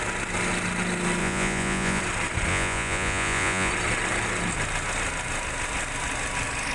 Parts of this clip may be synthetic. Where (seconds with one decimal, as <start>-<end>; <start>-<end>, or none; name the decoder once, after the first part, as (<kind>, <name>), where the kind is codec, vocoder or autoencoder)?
1.2-2.0 (vocoder, Vocos); 2.5-3.7